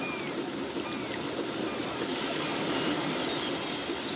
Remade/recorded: recorded